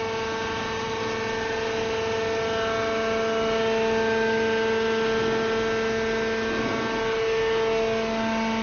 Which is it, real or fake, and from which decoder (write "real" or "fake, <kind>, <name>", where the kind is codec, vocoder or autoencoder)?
real